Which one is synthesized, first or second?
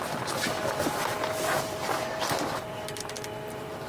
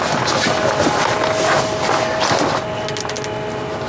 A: first